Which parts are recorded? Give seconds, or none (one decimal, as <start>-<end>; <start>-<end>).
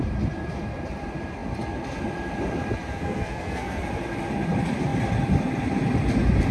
0.0-2.9; 3.8-6.5